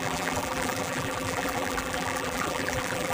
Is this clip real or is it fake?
fake